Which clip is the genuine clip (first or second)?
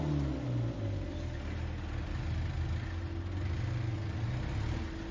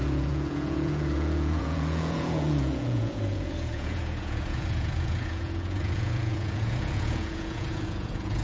first